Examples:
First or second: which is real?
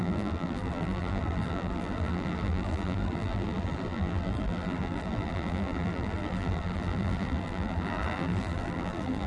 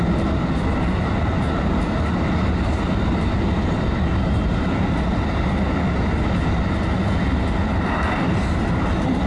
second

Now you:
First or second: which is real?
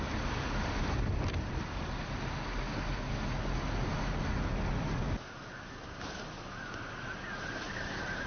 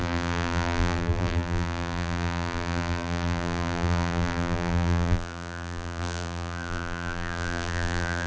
first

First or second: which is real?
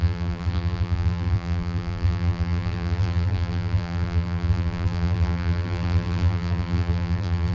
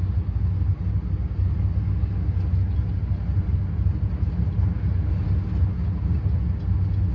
second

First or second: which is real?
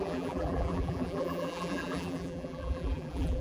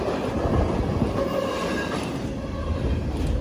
second